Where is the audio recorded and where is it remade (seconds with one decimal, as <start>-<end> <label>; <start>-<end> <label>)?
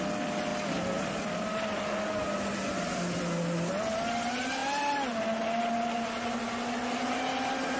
0.0-7.8 recorded